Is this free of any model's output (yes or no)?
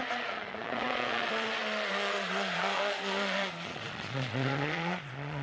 no